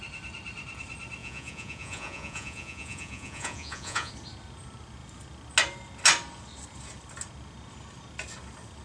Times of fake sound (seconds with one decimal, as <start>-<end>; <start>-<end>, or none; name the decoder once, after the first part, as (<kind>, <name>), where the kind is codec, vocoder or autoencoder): 1.2-4.1 (vocoder, Vocos)